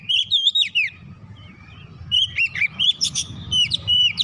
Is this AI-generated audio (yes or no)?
yes